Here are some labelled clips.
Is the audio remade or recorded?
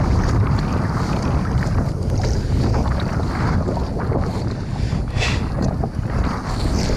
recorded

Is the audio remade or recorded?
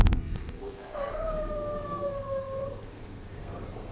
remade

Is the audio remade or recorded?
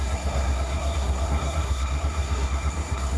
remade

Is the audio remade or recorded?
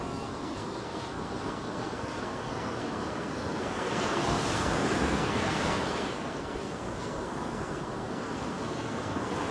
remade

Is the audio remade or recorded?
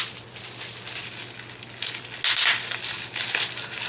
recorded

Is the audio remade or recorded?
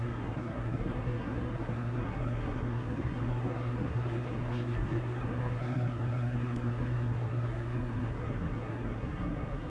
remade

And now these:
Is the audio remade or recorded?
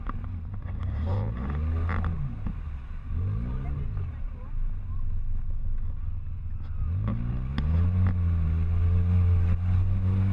recorded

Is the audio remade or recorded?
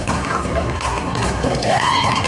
remade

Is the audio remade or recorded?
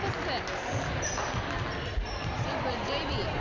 recorded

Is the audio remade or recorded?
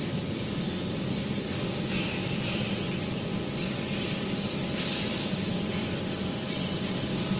recorded